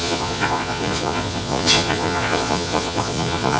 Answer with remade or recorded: remade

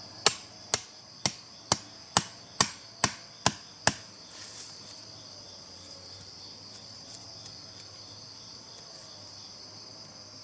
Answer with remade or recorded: recorded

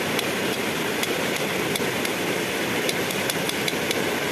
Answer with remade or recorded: recorded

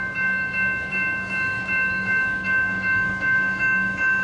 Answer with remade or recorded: remade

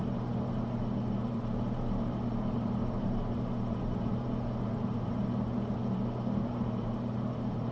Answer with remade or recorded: remade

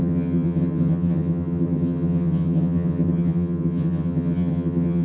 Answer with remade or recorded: remade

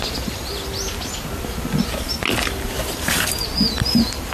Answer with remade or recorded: recorded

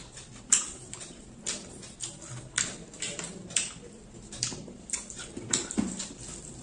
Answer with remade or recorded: remade